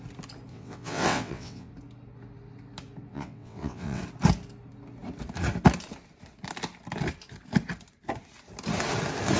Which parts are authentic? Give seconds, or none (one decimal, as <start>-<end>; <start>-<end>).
0.0-0.5; 1.7-3.1; 4.0-9.4